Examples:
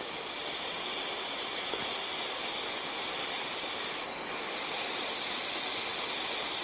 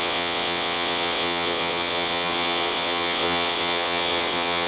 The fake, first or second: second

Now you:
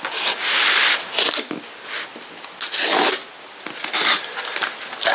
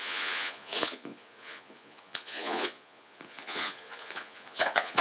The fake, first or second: second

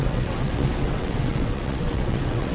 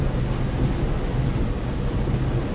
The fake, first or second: first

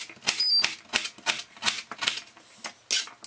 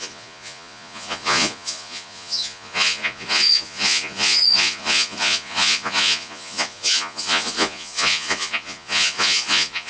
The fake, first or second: second